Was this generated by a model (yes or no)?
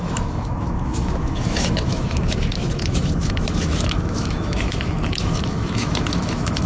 yes